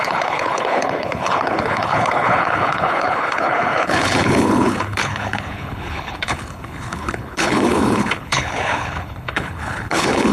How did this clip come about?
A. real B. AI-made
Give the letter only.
B